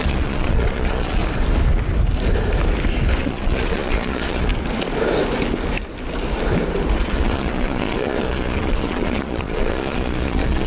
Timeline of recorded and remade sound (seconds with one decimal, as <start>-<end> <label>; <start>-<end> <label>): 0.0-1.2 remade; 1.2-3.2 recorded; 3.2-4.5 remade; 4.5-7.0 recorded; 7.0-10.7 remade